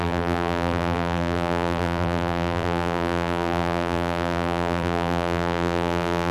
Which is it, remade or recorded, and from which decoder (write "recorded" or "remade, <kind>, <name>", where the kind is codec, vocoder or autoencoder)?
remade, vocoder, BigVGAN v2